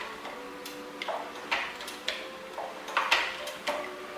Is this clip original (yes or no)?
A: yes